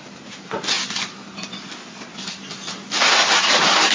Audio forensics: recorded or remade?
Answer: recorded